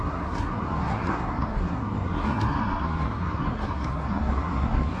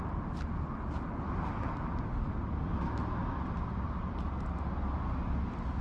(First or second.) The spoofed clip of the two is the first